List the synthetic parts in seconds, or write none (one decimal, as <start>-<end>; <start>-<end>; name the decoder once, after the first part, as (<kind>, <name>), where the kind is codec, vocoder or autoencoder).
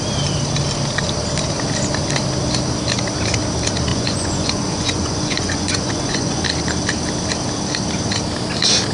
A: 3.9-6.4 (vocoder, Vocos)